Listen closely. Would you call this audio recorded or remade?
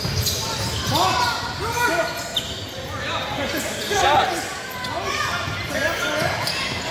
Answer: recorded